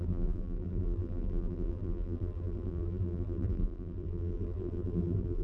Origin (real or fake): fake